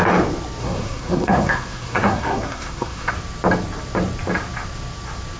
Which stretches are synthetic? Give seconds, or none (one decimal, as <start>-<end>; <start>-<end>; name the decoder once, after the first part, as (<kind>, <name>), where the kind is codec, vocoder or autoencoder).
0.6-3.1 (codec, SNAC)